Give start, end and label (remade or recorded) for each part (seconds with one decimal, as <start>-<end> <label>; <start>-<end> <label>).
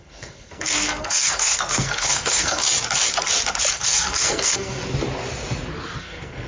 0.0-2.6 remade; 2.6-3.7 recorded; 3.7-4.8 remade; 4.8-6.0 recorded; 6.0-6.5 remade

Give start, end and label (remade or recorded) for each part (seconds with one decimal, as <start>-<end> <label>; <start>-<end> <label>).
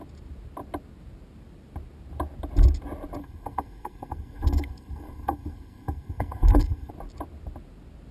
0.0-3.2 recorded; 3.2-6.9 remade; 6.9-8.1 recorded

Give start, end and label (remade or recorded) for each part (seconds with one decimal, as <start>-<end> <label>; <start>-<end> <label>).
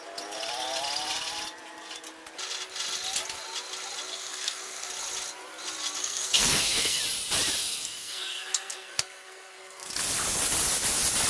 0.0-4.1 recorded; 4.1-4.9 remade; 4.9-6.0 recorded; 6.0-7.0 remade; 7.0-7.6 recorded; 7.6-9.9 remade; 9.9-11.3 recorded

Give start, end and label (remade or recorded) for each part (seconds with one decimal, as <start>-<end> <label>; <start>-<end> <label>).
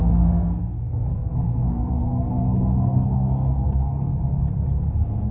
0.0-4.1 remade; 4.1-4.8 recorded; 4.8-5.3 remade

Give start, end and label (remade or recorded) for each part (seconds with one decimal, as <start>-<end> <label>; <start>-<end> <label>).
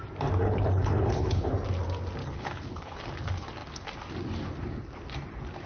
0.0-0.4 recorded; 0.4-1.5 remade; 1.5-2.2 recorded; 2.2-3.1 remade; 3.1-5.7 recorded